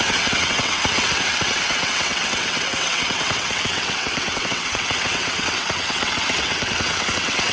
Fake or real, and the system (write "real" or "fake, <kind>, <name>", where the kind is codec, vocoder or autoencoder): fake, vocoder, WaveNeXt